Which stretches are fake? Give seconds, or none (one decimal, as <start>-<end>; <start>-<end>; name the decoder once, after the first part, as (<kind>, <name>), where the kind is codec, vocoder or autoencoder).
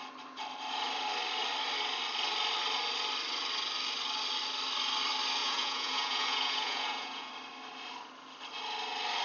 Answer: 5.4-7.3 (vocoder, Vocos)